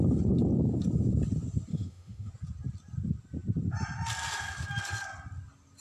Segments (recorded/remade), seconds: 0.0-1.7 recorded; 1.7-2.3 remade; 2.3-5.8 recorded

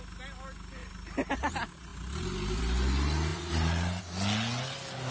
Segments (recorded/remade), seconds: 0.0-0.8 recorded; 0.8-1.5 remade; 1.5-3.3 recorded; 3.3-4.0 remade; 4.0-5.1 recorded